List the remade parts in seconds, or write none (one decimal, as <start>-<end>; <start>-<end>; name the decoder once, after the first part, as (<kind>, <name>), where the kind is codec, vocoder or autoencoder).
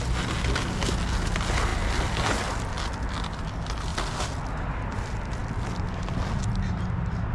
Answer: 1.7-2.5 (vocoder, BigVGAN v2); 3.9-4.4